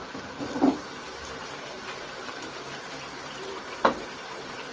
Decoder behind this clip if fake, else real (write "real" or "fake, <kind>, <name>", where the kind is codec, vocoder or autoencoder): fake, vocoder, BigVGAN v2